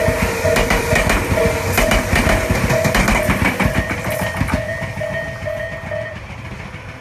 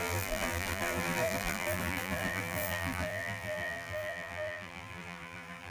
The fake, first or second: second